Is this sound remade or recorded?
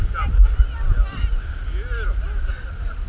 recorded